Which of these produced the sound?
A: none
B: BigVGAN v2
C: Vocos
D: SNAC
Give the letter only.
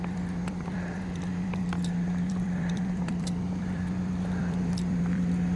B